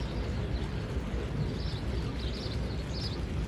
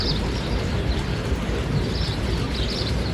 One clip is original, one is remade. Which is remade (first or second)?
second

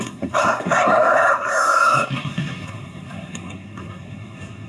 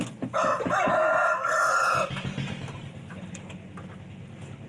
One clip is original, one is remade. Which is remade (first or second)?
first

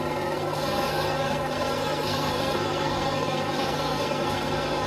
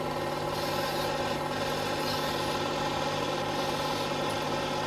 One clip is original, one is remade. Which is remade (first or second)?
first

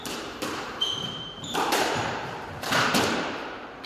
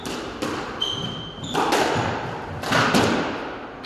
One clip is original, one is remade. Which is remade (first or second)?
first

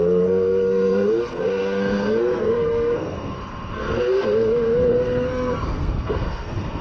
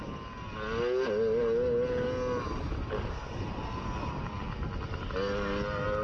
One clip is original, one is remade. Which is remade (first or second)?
first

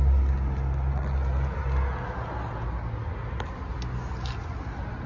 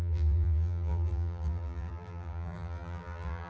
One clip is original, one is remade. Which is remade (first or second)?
second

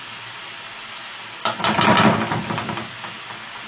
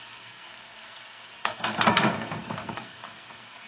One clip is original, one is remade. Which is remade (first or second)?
second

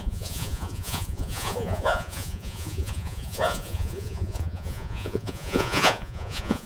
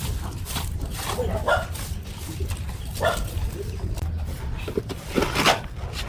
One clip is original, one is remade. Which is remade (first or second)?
first